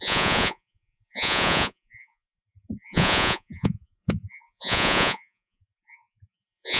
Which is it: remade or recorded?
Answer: remade